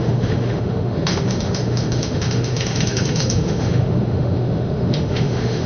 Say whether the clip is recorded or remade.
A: remade